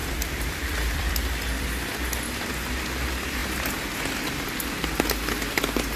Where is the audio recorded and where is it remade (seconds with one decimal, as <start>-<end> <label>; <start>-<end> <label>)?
0.0-1.1 remade; 1.1-6.0 recorded